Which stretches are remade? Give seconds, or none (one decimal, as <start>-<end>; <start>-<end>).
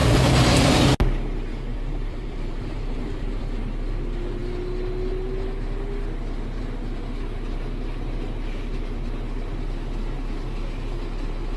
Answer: 0.0-0.8; 1.7-3.4